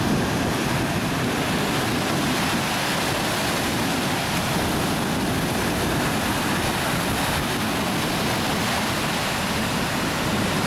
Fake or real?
real